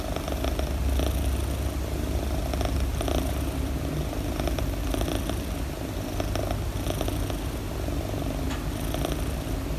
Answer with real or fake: real